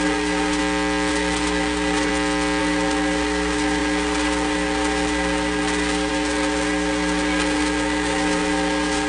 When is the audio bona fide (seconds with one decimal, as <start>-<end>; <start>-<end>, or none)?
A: 0.6-1.1; 2.1-2.6